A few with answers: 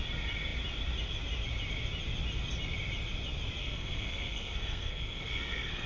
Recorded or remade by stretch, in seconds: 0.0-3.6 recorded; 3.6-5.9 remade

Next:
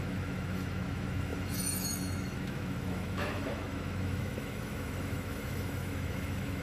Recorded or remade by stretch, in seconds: 0.0-6.6 remade

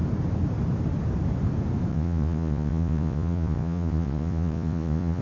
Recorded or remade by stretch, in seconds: 0.0-1.9 recorded; 1.9-5.2 remade

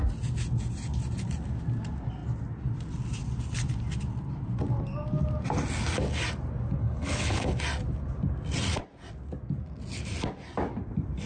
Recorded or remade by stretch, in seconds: 0.0-6.8 recorded; 6.8-7.5 remade; 7.5-11.3 recorded

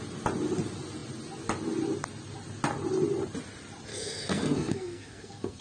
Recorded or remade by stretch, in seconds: 0.0-3.9 recorded; 3.9-5.6 remade